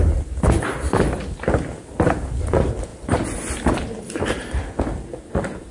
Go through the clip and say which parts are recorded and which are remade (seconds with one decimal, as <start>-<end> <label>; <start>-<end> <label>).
0.0-5.7 recorded